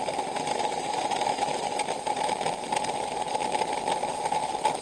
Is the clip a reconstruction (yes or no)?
no